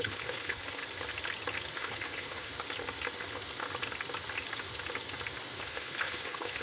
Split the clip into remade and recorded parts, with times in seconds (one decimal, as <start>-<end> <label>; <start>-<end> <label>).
0.0-0.8 remade; 0.8-1.8 recorded; 1.8-2.5 remade; 2.5-5.6 recorded; 5.6-6.6 remade